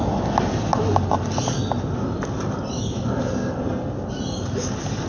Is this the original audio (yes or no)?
yes